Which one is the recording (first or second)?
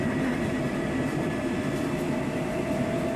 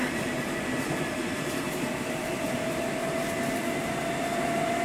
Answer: first